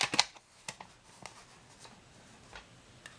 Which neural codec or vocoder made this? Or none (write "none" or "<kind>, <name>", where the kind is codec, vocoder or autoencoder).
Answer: none